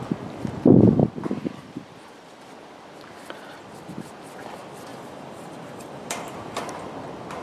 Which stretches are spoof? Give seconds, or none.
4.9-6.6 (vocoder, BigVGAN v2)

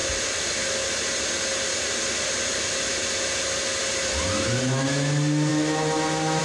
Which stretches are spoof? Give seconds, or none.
none

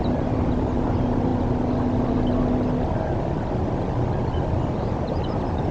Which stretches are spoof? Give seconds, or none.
0.0-1.3 (vocoder, BigVGAN v2); 4.7-5.7

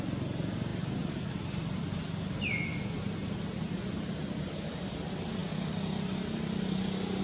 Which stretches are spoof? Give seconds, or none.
3.2-4.2 (vocoder, BigVGAN v2)

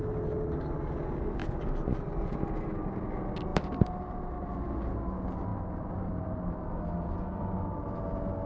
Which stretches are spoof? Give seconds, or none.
3.5-4.6 (vocoder, BigVGAN v2); 5.5-6.8

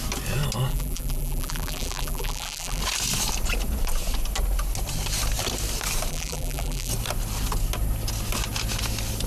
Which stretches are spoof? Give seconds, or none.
0.7-2.8 (vocoder, BigVGAN v2); 6.1-6.9

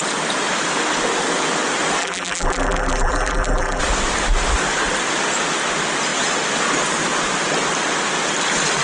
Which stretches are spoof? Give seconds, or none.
2.0-3.8 (vocoder, BigVGAN v2)

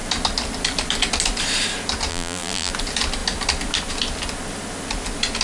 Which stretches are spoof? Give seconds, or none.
2.1-2.7 (vocoder, BigVGAN v2)